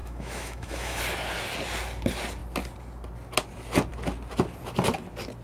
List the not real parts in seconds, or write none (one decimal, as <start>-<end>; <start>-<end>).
0.0-1.0